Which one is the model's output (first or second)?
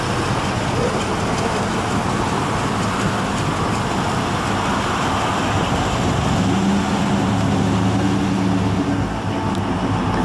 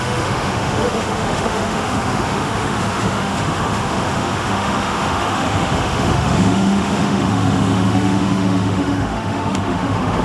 second